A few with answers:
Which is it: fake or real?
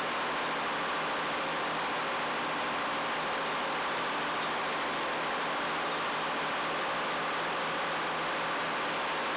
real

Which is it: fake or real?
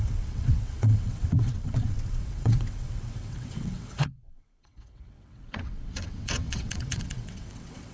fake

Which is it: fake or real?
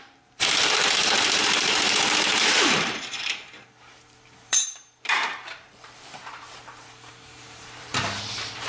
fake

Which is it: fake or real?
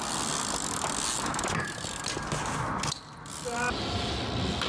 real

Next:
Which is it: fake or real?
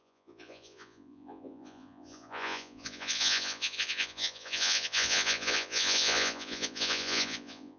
fake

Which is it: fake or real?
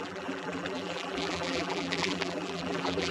fake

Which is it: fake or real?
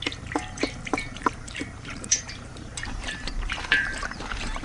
fake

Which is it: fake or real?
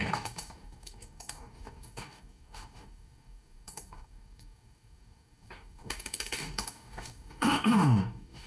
fake